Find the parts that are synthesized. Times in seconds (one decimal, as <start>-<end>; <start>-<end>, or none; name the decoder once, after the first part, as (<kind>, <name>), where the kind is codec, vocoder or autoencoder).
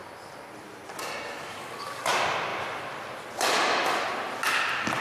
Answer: 1.5-2.1 (codec, DAC)